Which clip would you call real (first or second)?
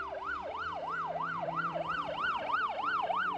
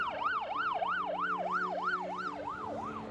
second